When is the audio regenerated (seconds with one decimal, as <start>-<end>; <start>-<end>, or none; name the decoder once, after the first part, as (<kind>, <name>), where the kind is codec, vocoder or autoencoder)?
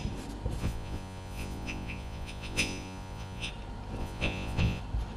0.6-3.5 (vocoder, Vocos); 4.0-4.8